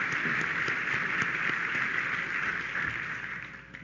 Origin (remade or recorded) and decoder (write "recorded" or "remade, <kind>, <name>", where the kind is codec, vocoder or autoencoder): recorded